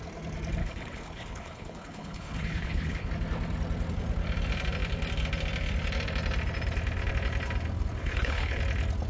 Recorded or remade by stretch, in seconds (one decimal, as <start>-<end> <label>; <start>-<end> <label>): 0.0-0.6 recorded; 0.6-3.1 remade; 3.1-8.0 recorded; 8.0-8.6 remade; 8.6-9.1 recorded